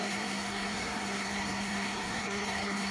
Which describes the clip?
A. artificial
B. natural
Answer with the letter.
A